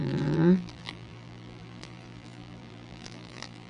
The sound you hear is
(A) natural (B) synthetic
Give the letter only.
B